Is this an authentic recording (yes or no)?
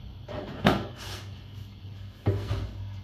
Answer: no